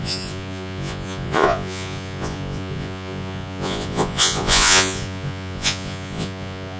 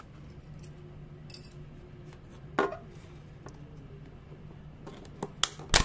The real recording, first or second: second